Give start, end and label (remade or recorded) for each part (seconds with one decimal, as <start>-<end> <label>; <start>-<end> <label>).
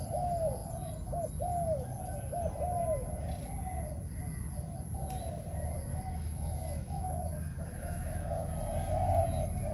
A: 0.0-5.9 recorded; 5.9-8.5 remade; 8.5-9.7 recorded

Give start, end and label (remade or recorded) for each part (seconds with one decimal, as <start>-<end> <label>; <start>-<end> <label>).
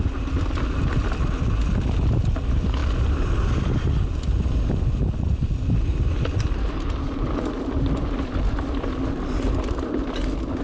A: 0.0-10.6 recorded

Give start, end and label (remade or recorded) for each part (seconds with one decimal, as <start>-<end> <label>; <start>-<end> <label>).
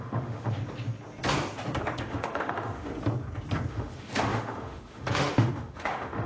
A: 0.0-0.6 remade; 0.6-2.0 recorded; 2.0-2.9 remade; 2.9-3.7 recorded; 3.7-6.3 remade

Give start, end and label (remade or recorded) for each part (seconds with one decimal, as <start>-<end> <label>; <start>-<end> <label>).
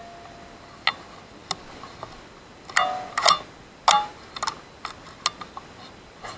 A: 0.0-6.4 recorded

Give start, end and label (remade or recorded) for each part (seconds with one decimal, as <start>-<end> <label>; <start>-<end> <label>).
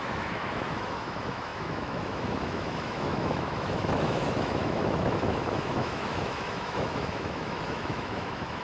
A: 0.0-8.6 remade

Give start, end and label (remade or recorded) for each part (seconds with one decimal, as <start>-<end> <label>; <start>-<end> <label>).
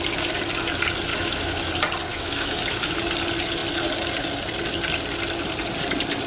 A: 0.0-1.1 recorded; 1.1-1.7 remade; 1.7-2.1 recorded; 2.1-3.0 remade; 3.0-6.3 recorded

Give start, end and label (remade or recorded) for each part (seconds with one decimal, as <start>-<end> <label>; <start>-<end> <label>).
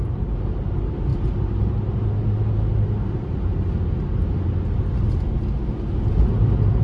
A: 0.0-6.8 recorded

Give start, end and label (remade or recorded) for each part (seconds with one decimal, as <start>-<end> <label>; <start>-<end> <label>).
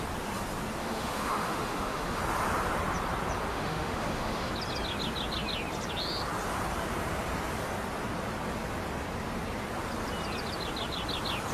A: 0.0-0.8 recorded; 0.8-2.2 remade; 2.2-3.5 recorded; 3.5-4.5 remade; 4.5-11.5 recorded